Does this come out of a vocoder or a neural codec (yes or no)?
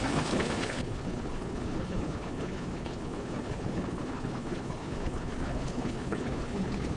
yes